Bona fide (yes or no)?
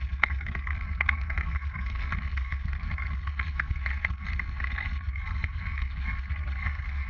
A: no